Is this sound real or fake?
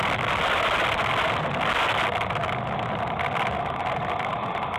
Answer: real